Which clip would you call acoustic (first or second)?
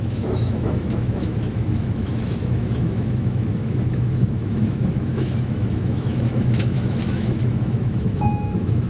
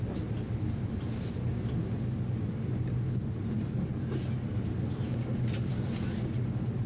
second